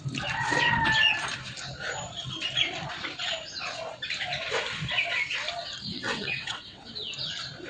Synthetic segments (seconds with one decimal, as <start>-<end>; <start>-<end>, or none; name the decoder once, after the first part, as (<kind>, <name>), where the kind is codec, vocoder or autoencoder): 5.9-6.9 (vocoder, WaveNeXt)